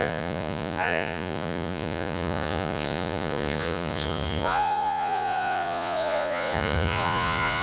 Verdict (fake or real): fake